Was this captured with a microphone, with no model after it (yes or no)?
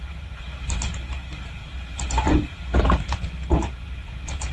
no